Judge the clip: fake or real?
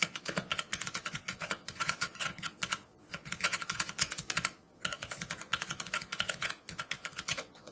fake